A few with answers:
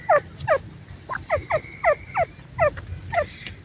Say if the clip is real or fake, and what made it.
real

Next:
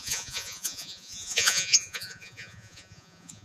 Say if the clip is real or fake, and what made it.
fake, vocoder, Vocos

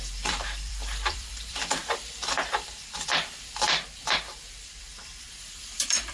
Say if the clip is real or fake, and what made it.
fake, vocoder, BigVGAN v2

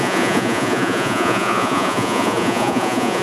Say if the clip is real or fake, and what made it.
fake, vocoder, Vocos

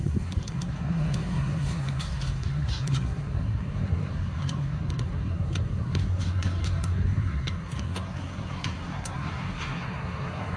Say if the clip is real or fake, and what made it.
fake, codec, SNAC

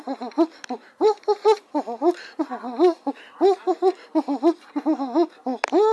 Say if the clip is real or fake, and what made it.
real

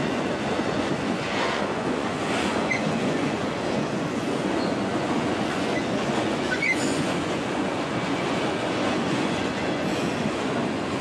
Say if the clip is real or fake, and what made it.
fake, vocoder, Vocos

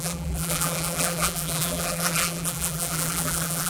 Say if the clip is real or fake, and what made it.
fake, vocoder, BigVGAN v2